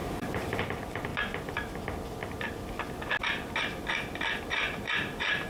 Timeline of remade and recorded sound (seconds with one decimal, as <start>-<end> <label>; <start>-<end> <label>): 0.0-1.1 remade; 1.1-4.4 recorded; 4.4-5.5 remade